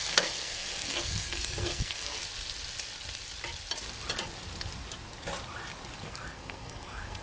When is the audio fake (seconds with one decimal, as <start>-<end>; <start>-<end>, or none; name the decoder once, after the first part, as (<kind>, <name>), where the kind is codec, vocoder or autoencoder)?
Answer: 0.0-2.2 (codec, SNAC); 6.0-7.2